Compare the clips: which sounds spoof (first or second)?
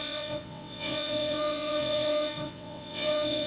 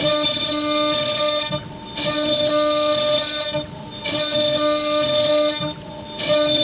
first